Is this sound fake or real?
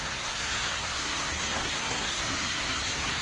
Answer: fake